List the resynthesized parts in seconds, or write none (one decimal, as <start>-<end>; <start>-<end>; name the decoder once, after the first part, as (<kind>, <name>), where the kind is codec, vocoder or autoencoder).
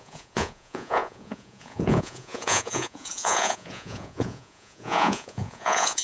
0.0-6.0 (vocoder, Vocos)